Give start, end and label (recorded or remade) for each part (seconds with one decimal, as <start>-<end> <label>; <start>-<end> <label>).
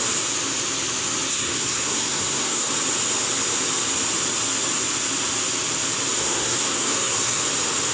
0.0-1.3 recorded; 1.3-2.7 remade; 2.7-6.2 recorded; 6.2-7.4 remade; 7.4-7.9 recorded